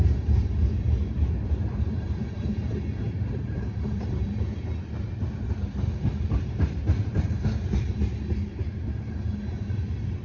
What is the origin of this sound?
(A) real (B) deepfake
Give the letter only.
B